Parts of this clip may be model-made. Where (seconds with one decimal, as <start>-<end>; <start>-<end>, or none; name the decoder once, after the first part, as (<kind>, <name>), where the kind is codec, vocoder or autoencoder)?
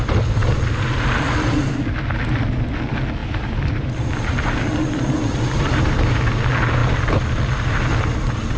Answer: 3.2-6.3 (vocoder, BigVGAN v2); 6.8-7.4